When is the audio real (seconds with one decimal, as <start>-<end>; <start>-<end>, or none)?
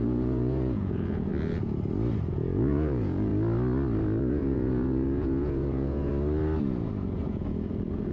1.3-2.3; 3.3-4.2; 6.1-7.2